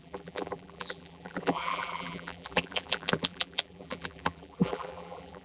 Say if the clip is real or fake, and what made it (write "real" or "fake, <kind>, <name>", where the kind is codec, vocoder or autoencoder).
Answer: fake, vocoder, BigVGAN v2